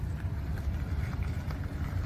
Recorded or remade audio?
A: remade